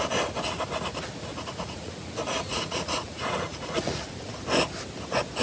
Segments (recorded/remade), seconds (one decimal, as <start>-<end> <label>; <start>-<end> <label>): 0.0-1.3 recorded; 1.3-4.0 remade; 4.0-5.4 recorded